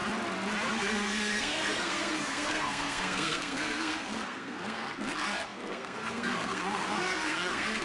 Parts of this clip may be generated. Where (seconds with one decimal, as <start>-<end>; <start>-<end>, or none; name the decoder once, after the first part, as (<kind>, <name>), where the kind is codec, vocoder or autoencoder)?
0.7-7.8 (codec, SNAC)